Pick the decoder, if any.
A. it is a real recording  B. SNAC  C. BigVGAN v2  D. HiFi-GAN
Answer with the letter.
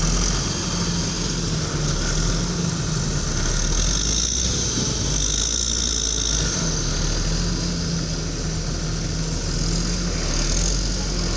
A